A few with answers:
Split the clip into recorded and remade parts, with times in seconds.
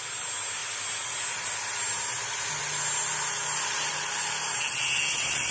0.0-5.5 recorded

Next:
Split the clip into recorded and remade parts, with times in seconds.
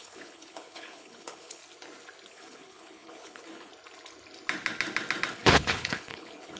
0.0-1.6 remade; 1.6-2.3 recorded; 2.3-3.7 remade; 3.7-5.3 recorded; 5.3-6.6 remade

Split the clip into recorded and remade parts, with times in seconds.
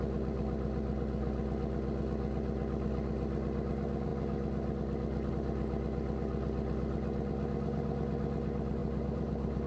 0.0-8.8 recorded; 8.8-9.7 remade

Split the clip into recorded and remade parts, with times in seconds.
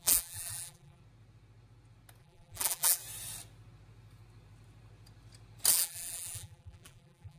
0.0-1.0 remade; 1.0-2.2 recorded; 2.2-3.0 remade; 3.0-5.7 recorded; 5.7-7.4 remade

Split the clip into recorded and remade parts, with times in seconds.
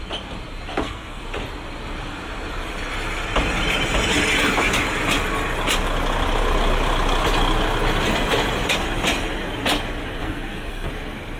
0.0-0.7 recorded; 0.7-1.2 remade; 1.2-10.2 recorded; 10.2-10.9 remade; 10.9-11.4 recorded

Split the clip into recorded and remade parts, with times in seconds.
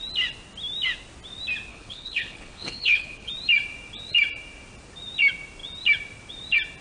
0.0-1.7 recorded; 1.7-3.3 remade; 3.3-6.8 recorded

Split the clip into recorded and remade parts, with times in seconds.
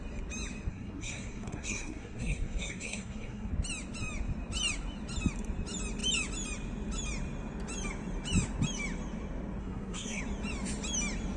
0.0-0.7 recorded; 0.7-3.5 remade; 3.5-9.6 recorded; 9.6-10.2 remade; 10.2-11.4 recorded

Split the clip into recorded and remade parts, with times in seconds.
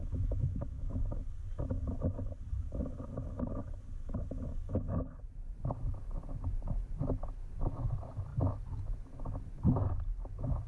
0.0-1.0 remade; 1.0-10.7 recorded